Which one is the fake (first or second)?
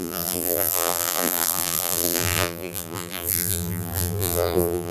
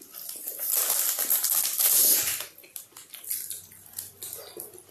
first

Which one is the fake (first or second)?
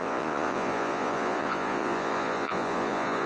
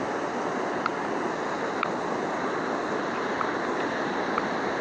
first